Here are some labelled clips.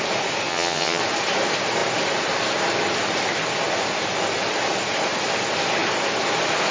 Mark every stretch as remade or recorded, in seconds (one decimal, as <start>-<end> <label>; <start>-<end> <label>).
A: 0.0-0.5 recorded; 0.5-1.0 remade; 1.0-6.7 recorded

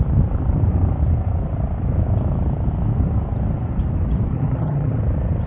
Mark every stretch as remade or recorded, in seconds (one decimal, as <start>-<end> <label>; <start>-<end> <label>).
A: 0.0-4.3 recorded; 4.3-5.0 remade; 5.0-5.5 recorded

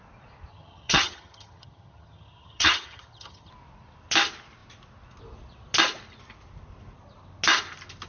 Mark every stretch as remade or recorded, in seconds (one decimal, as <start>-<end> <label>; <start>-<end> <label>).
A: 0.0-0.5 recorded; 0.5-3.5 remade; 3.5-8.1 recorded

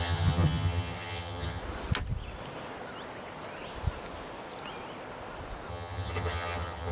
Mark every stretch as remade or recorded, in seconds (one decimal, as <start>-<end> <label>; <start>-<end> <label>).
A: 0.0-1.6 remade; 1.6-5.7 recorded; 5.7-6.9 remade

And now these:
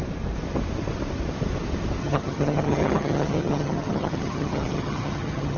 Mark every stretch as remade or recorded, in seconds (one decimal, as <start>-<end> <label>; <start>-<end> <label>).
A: 0.0-2.0 recorded; 2.0-5.6 remade

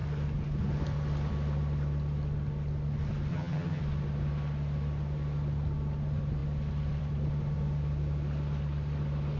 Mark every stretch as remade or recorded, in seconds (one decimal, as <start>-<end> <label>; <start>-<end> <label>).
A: 0.0-3.3 recorded; 3.3-3.8 remade; 3.8-9.4 recorded

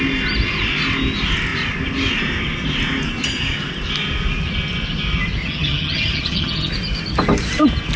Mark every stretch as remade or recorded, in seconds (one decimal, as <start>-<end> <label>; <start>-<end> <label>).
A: 0.0-5.4 recorded; 5.4-6.7 remade; 6.7-8.0 recorded

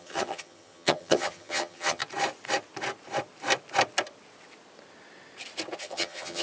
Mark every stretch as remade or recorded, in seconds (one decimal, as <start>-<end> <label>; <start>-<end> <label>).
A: 0.0-2.0 remade; 2.0-5.8 recorded; 5.8-6.4 remade